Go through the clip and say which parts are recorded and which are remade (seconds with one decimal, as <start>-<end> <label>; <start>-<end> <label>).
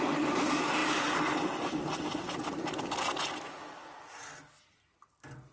0.0-5.5 recorded